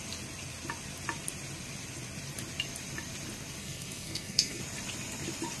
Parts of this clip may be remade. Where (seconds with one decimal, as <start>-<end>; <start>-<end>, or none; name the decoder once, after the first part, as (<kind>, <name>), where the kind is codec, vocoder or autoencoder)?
3.6-4.6 (codec, SNAC)